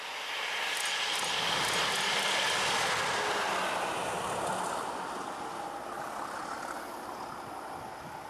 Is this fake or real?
real